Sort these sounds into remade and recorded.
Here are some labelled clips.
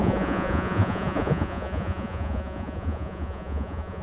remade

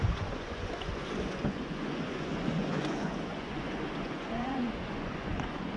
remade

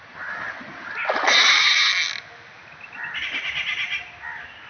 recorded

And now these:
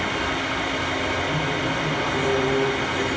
recorded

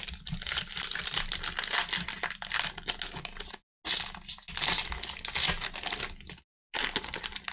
recorded